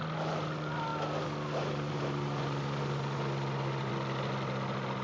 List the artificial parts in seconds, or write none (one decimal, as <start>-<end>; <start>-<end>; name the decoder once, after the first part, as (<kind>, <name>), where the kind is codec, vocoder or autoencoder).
none